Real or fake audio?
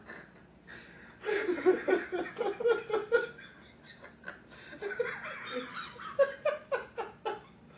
real